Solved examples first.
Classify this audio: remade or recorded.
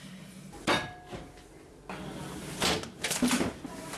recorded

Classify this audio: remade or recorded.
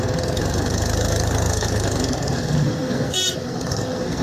remade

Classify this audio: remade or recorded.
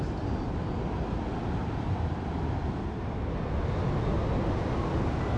recorded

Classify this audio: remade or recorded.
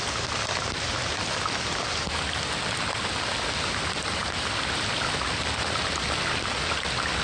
recorded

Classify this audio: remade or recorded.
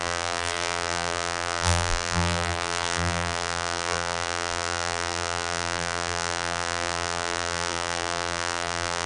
remade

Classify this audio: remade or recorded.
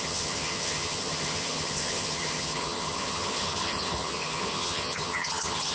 remade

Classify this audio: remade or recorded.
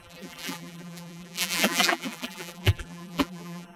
remade